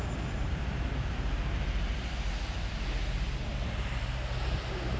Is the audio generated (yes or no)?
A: no